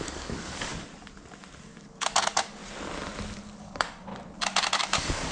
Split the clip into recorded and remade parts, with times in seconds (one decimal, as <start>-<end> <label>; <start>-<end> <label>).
0.0-0.7 remade; 0.7-1.6 recorded; 1.6-2.6 remade; 2.6-3.6 recorded; 3.6-4.1 remade; 4.1-4.7 recorded; 4.7-5.3 remade